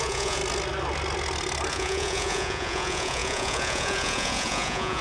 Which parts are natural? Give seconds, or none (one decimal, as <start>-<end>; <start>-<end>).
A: 0.4-1.7

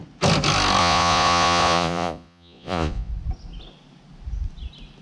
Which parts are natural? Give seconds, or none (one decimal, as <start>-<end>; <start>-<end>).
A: 0.0-0.8; 3.1-5.0

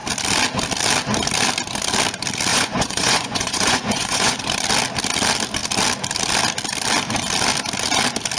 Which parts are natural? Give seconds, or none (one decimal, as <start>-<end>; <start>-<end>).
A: 0.0-2.5; 4.4-8.4